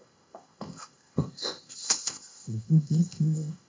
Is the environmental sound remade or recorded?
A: remade